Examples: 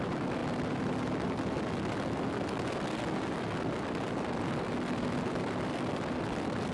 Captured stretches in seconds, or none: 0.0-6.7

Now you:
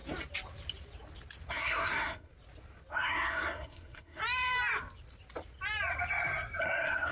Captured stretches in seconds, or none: 0.0-1.5; 2.3-2.9; 4.2-6.6

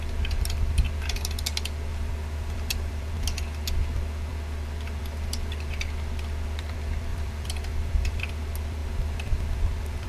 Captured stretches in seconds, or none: 0.0-1.9; 3.1-7.1; 8.3-8.8

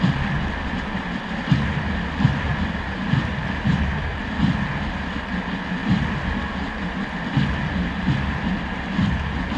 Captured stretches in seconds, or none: 0.0-2.5; 3.3-4.1; 4.8-9.6

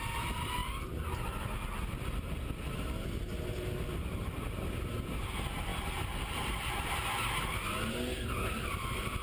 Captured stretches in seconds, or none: 0.0-9.2

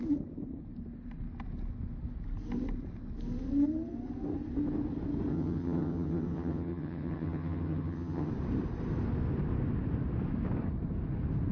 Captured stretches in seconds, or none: 0.0-5.3; 8.3-11.5

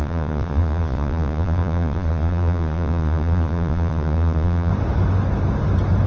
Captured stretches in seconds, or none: 4.7-6.1